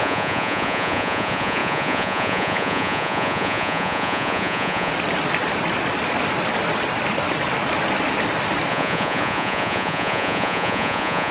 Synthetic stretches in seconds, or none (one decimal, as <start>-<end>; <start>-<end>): 0.0-4.9; 8.7-11.3